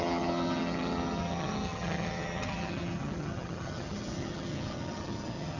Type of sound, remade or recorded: remade